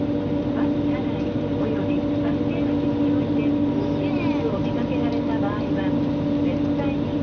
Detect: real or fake real